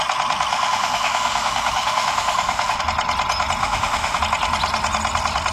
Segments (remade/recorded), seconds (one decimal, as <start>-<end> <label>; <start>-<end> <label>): 0.0-0.5 recorded; 0.5-2.8 remade; 2.8-3.6 recorded; 3.6-4.2 remade; 4.2-5.5 recorded